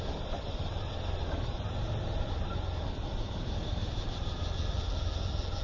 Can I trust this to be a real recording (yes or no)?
yes